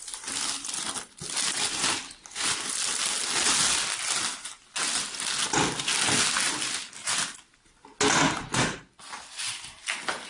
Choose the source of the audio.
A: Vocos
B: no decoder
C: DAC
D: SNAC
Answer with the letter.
B